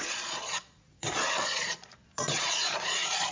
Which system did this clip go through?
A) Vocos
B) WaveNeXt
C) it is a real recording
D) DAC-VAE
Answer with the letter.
A